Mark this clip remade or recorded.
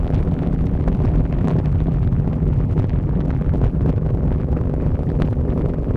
remade